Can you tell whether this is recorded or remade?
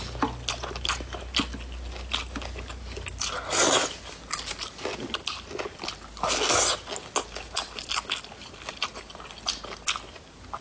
recorded